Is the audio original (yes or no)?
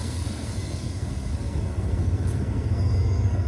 no